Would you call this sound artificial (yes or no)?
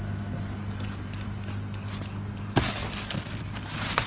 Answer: no